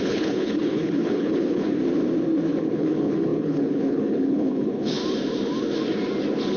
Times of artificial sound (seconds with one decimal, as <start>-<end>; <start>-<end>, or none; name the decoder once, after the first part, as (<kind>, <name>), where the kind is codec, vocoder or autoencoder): 0.0-1.8 (codec, HILCodec); 2.6-5.0